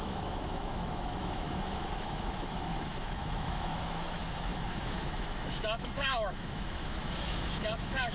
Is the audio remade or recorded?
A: remade